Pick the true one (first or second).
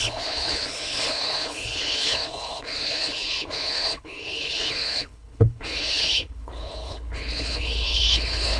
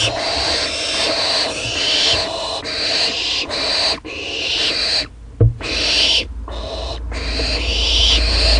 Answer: second